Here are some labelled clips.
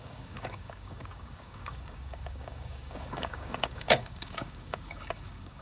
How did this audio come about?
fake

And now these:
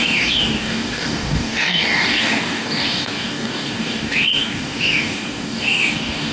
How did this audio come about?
fake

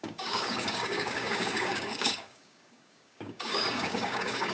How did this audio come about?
fake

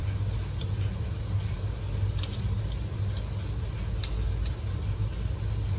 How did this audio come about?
real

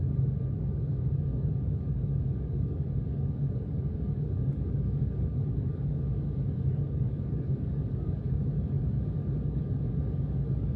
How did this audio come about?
fake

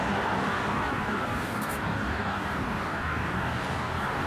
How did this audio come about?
fake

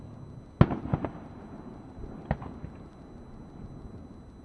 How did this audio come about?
real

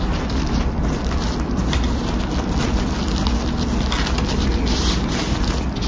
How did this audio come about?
real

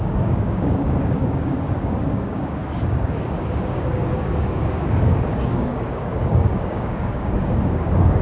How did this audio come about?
fake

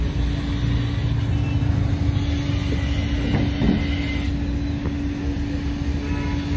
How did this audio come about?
real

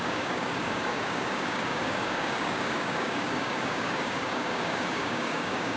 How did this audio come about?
fake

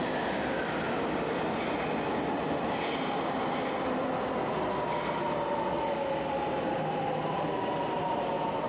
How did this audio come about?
real